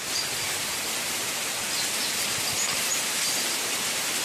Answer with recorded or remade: recorded